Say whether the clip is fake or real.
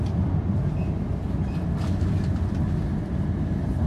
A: real